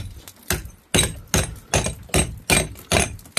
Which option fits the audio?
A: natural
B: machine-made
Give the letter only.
A